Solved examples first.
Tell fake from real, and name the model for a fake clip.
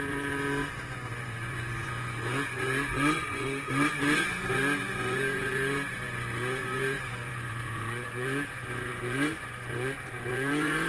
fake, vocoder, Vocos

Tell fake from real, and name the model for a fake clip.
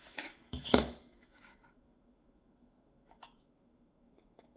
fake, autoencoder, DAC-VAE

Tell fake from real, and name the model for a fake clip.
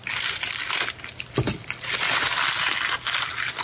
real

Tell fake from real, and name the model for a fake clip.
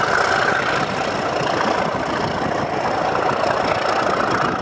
real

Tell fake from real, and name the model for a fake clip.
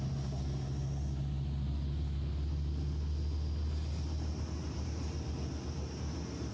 real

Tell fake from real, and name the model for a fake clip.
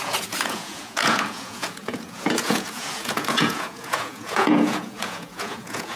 fake, vocoder, Vocos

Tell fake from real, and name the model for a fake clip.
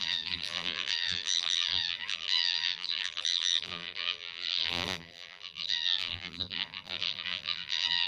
fake, vocoder, BigVGAN v2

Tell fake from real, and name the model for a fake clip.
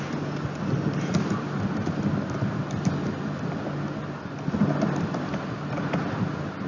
real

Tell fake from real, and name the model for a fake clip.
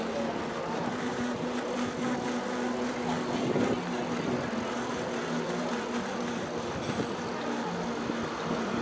real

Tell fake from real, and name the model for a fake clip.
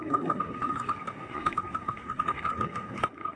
fake, codec, SNAC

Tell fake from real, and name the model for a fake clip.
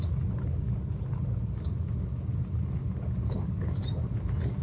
real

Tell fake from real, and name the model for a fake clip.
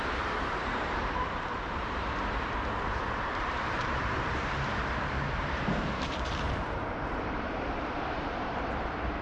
fake, vocoder, BigVGAN v2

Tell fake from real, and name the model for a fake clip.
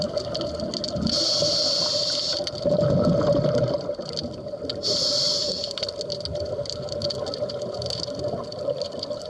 real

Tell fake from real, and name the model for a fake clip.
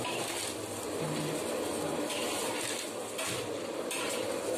real